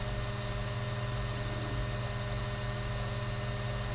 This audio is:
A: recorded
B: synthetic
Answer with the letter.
A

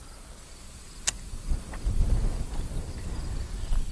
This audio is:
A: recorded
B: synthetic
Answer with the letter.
A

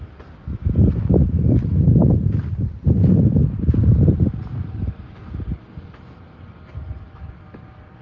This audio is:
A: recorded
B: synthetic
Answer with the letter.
A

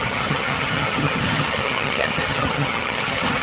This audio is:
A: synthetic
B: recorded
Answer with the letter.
A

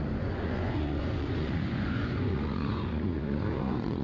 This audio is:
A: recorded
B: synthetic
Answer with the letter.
B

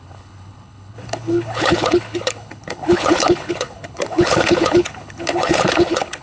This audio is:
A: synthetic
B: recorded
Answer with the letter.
A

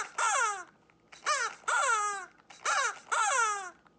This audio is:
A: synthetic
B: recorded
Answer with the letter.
B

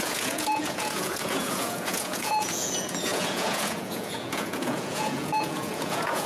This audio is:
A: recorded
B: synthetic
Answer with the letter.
B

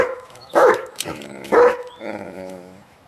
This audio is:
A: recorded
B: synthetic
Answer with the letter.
B